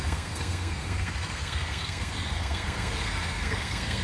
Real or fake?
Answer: fake